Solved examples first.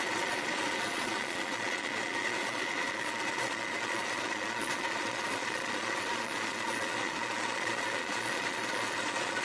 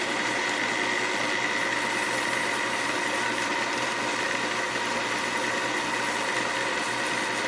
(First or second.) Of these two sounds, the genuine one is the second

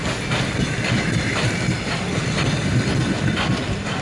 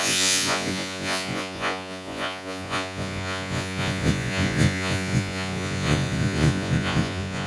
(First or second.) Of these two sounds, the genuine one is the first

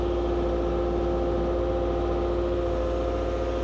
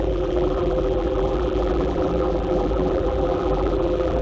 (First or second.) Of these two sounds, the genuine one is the first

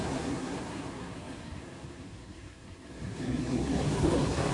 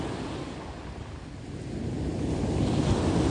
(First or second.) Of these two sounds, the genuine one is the second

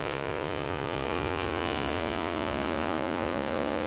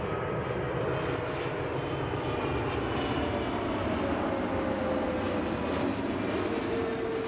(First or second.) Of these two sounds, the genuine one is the second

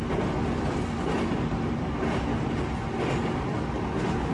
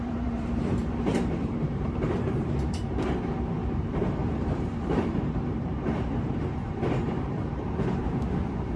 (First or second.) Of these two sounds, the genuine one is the first